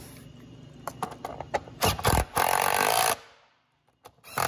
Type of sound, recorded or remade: recorded